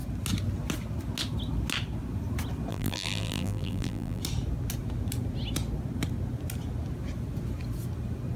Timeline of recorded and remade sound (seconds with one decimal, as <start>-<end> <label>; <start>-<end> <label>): 0.0-2.7 recorded; 2.7-4.2 remade; 4.2-8.4 recorded